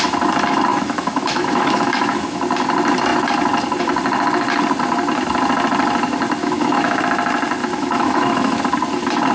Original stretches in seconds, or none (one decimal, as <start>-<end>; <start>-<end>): 0.0-0.7; 2.4-6.4; 7.0-7.6; 8.6-9.3